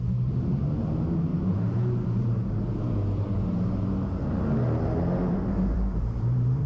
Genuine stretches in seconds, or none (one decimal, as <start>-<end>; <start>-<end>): 1.3-5.3